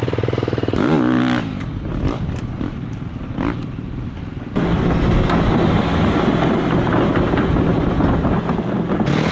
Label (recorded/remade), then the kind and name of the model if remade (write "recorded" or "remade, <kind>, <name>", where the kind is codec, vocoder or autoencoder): recorded